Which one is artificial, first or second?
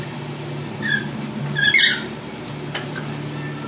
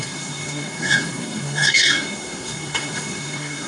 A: second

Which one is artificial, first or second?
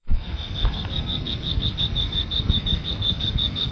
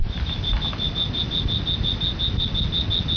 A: first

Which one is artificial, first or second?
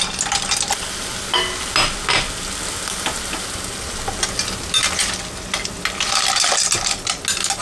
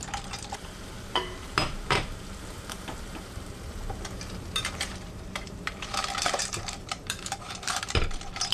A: second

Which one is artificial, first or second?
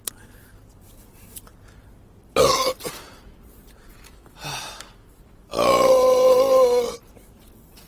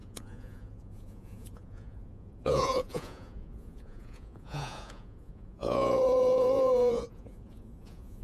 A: second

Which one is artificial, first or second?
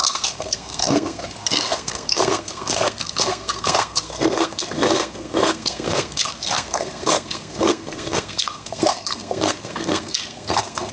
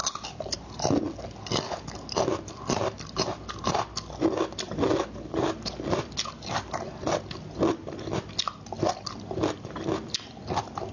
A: first